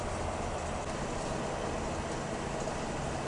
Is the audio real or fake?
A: real